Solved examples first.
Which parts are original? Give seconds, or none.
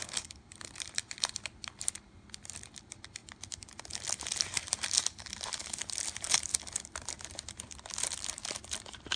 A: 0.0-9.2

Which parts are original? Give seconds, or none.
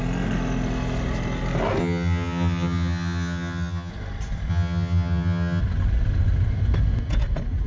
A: 0.0-1.8; 3.9-4.5; 5.6-7.7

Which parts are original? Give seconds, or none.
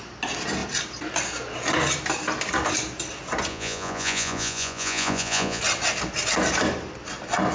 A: 0.0-3.5; 5.6-7.5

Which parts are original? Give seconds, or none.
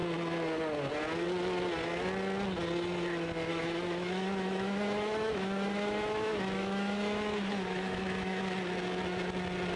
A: 0.0-3.5; 8.4-9.8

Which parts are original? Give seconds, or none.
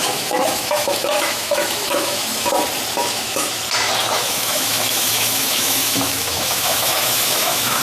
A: 2.5-3.0; 3.6-4.0